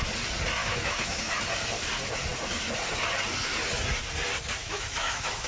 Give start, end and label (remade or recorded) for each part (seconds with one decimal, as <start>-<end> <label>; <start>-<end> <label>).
0.0-0.6 recorded; 0.6-1.4 remade; 1.4-4.6 recorded; 4.6-5.5 remade